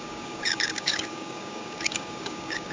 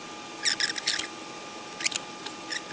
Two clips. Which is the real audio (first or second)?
second